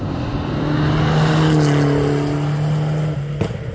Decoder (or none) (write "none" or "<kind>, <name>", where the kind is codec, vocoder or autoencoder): none